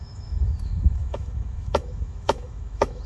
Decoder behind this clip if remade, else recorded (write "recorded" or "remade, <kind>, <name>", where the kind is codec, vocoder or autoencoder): remade, autoencoder, DAC-VAE